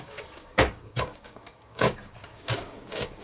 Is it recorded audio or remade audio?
remade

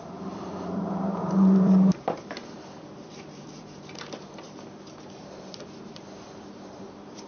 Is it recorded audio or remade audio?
remade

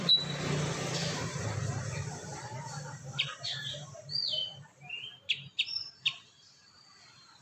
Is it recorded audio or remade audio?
remade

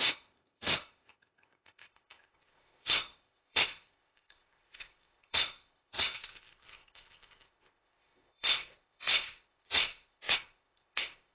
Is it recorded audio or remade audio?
remade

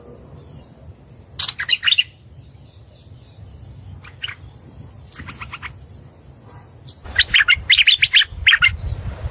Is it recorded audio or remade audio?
recorded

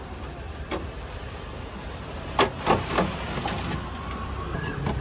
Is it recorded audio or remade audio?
recorded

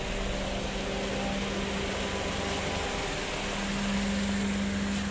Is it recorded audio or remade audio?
recorded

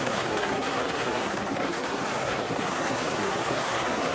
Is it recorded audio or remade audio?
remade